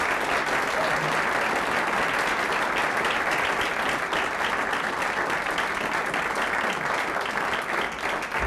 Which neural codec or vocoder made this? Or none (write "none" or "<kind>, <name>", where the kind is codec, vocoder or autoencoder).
none